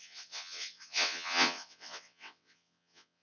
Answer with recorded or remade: remade